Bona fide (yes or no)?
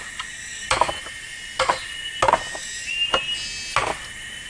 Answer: yes